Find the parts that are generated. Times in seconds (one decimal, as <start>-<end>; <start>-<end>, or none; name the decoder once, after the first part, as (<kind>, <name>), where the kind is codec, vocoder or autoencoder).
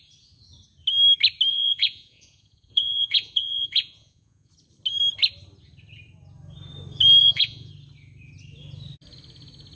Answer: 1.5-4.5 (vocoder, Vocos); 7.2-7.7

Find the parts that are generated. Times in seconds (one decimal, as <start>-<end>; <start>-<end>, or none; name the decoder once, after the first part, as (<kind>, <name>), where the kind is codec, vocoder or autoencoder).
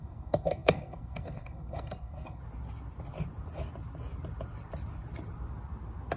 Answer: 0.0-2.4 (codec, SNAC)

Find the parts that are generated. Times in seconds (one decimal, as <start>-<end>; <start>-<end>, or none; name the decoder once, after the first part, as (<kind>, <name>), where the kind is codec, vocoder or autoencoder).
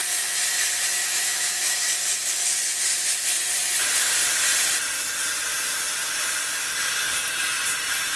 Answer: 1.0-1.9 (autoencoder, DAC-VAE)